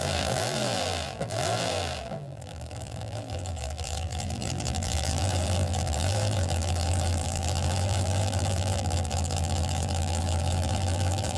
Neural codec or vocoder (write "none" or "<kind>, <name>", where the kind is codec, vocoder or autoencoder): vocoder, BigVGAN v2